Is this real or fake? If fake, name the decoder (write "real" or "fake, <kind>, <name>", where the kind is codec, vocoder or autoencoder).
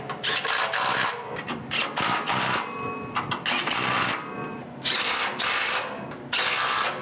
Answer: real